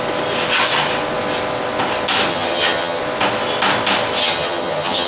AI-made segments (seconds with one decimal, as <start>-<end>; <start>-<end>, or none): 2.3-3.0; 4.2-5.1